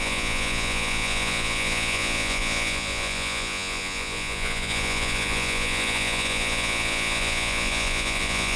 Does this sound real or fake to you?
fake